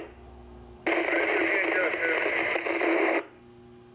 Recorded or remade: recorded